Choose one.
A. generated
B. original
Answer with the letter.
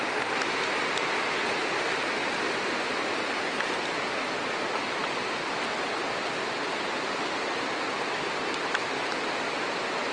B